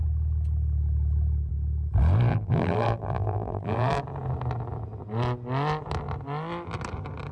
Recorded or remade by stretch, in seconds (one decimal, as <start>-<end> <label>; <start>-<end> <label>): 0.0-2.3 recorded; 2.3-4.0 remade; 4.0-7.3 recorded

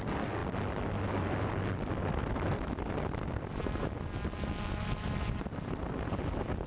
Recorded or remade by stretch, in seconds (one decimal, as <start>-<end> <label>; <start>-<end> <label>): 0.0-6.7 recorded

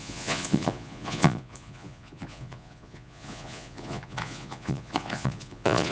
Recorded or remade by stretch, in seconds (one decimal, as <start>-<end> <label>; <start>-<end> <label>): 0.0-5.9 remade

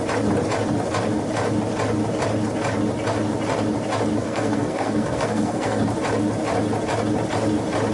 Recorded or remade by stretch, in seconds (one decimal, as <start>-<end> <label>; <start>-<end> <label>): 0.0-4.2 recorded; 4.2-5.8 remade; 5.8-7.9 recorded

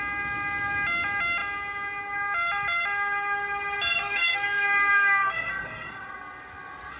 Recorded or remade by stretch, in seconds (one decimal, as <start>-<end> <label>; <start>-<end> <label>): 0.0-4.0 recorded; 4.0-5.3 remade; 5.3-7.0 recorded

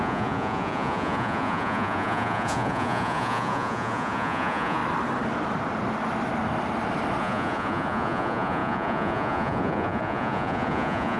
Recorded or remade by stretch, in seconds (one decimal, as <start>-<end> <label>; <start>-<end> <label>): 0.0-4.8 remade; 4.8-7.2 recorded; 7.2-11.2 remade

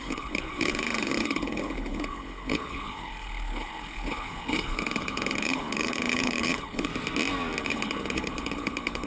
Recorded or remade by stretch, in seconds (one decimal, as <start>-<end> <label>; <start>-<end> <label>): 0.0-6.9 remade; 6.9-7.6 recorded; 7.6-9.1 remade

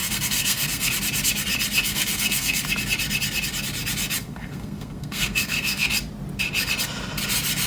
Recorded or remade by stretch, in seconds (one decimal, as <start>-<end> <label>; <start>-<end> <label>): 0.0-0.9 remade; 0.9-1.8 recorded; 1.8-2.6 remade; 2.6-4.2 recorded; 4.2-5.9 remade; 5.9-7.7 recorded